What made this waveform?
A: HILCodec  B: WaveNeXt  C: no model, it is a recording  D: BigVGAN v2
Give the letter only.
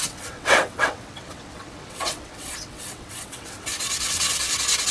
B